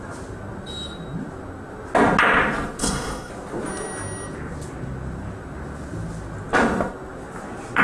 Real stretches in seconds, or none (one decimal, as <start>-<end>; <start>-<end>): 0.0-2.8; 3.3-7.8